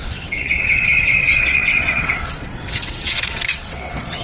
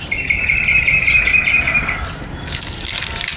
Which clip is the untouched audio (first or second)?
second